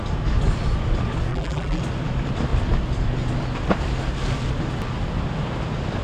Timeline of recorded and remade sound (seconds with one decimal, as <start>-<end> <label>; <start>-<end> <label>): 0.0-1.3 recorded; 1.3-1.8 remade; 1.8-6.0 recorded